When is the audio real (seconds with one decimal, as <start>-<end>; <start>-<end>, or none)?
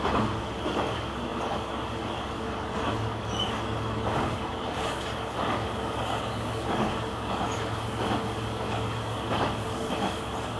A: none